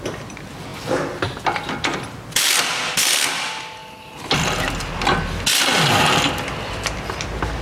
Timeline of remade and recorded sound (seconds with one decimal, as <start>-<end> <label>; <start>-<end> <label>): 0.0-7.6 recorded